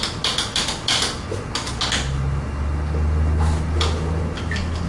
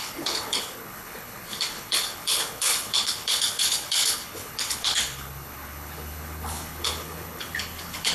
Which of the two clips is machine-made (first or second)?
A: second